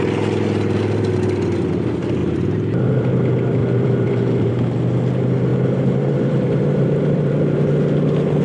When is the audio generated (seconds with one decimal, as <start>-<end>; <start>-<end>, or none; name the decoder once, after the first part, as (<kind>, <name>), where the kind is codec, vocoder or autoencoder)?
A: 2.2-3.1 (vocoder, BigVGAN v2); 3.6-4.5; 5.5-7.3